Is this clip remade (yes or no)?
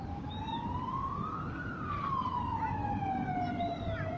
no